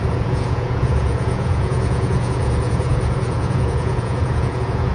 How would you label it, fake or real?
fake